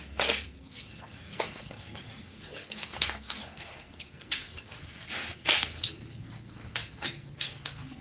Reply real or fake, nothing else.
fake